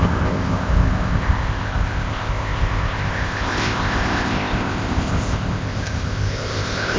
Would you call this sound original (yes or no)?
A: no